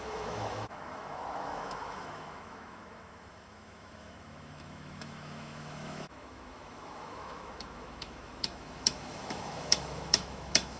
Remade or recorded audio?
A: remade